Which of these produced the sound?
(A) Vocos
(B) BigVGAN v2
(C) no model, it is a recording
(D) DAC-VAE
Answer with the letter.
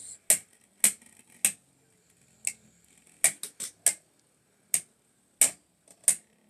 C